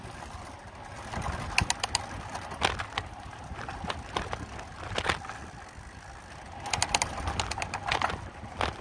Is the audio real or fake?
real